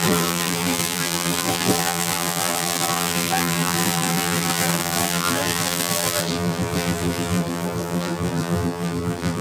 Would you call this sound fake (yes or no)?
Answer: yes